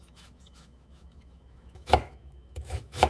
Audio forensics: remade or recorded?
remade